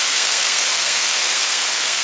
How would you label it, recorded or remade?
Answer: remade